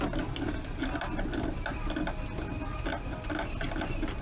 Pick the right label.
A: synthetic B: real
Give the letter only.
B